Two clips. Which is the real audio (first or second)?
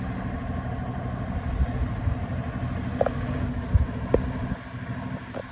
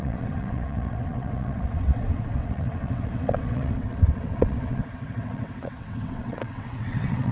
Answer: first